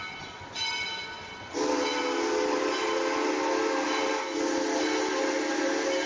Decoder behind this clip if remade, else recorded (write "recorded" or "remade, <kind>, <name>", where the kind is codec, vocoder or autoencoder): recorded